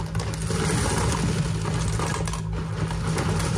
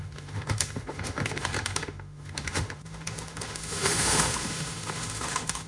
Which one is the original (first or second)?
first